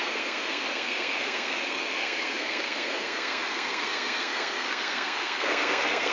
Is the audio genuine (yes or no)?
no